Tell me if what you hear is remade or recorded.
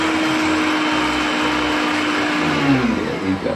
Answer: recorded